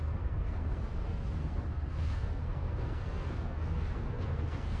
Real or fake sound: fake